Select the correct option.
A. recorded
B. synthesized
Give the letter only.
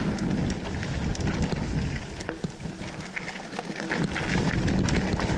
A